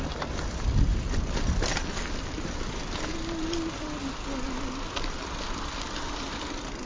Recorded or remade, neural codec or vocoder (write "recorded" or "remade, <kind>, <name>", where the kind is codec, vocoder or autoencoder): recorded